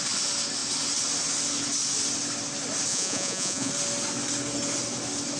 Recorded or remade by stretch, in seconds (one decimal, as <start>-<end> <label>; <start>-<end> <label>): 0.0-2.9 recorded; 2.9-3.7 remade; 3.7-5.4 recorded